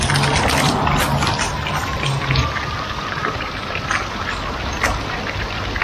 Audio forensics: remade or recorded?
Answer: recorded